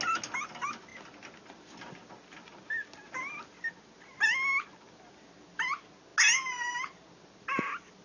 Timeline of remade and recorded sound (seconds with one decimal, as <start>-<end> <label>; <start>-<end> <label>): 0.0-8.0 recorded